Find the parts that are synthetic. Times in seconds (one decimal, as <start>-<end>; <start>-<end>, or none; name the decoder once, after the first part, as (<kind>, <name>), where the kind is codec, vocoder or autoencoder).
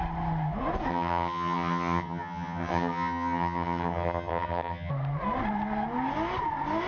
0.9-4.9 (vocoder, HiFi-GAN)